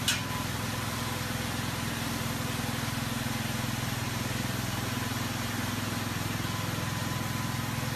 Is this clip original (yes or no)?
yes